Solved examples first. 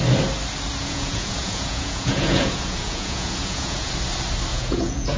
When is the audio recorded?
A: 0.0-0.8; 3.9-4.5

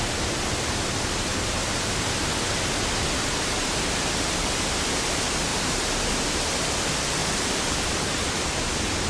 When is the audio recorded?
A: 0.0-5.5; 6.5-7.2; 8.3-9.1

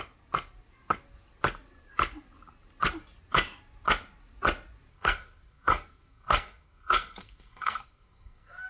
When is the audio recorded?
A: 0.0-4.9

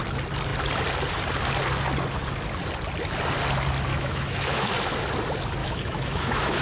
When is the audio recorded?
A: 0.0-3.9; 4.7-5.6

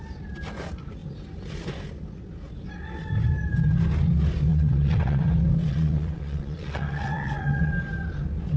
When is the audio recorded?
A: 0.0-4.5; 5.3-5.7; 7.7-8.6